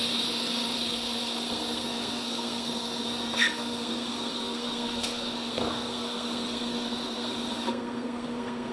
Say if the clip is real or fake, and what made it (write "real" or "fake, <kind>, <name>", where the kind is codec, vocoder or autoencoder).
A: fake, codec, SNAC